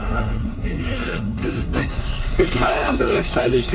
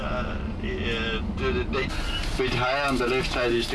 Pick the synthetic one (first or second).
first